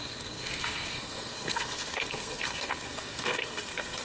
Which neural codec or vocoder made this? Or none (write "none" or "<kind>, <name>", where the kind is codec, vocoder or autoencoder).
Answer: codec, SNAC